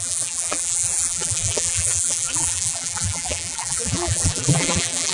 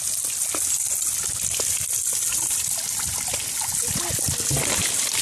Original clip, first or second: second